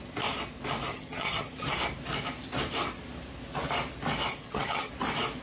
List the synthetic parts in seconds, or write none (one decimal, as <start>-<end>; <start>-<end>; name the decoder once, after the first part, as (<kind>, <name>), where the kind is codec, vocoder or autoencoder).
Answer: 0.9-1.7 (vocoder, HiFi-GAN); 4.3-4.9